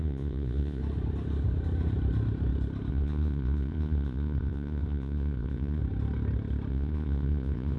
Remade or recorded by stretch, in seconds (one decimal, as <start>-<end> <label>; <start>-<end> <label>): 0.0-0.8 remade; 0.8-2.9 recorded; 2.9-5.8 remade; 5.8-6.7 recorded; 6.7-7.8 remade